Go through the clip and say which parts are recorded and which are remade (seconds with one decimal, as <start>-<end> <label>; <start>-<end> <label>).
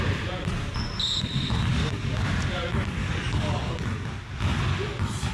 0.0-1.7 recorded; 1.7-2.3 remade; 2.3-3.0 recorded; 3.0-3.7 remade; 3.7-5.3 recorded